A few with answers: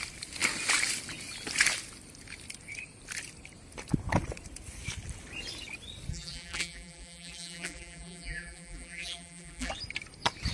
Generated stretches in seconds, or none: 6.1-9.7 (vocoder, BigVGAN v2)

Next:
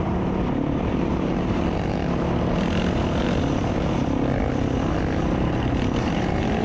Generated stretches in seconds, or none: 0.0-2.0 (vocoder, BigVGAN v2); 6.0-6.6

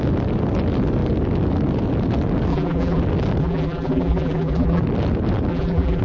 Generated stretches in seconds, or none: 2.5-3.0 (vocoder, BigVGAN v2); 3.4-4.8; 5.5-6.0

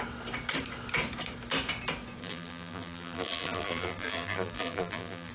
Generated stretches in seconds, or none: 2.2-5.3 (vocoder, BigVGAN v2)

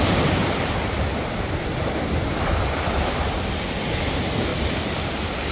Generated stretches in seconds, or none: 0.4-3.2 (vocoder, BigVGAN v2); 4.5-5.5

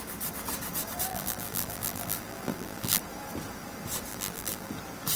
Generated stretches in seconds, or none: 1.1-3.0 (vocoder, BigVGAN v2); 4.1-4.7

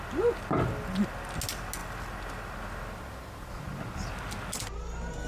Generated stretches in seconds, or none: 1.8-3.5 (vocoder, BigVGAN v2)